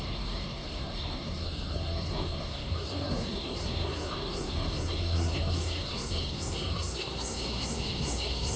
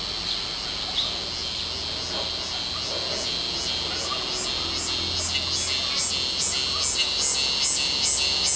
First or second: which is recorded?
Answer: second